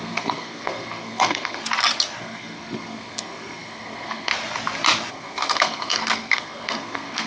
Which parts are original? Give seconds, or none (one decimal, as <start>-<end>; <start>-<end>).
1.6-2.2; 4.3-5.1